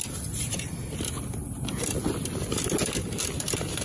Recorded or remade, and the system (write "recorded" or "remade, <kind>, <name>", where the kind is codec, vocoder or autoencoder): recorded